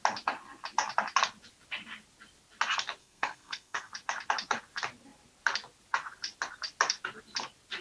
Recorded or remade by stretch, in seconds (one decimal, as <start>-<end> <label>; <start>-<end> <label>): 0.0-3.0 recorded; 3.0-3.9 remade; 3.9-7.8 recorded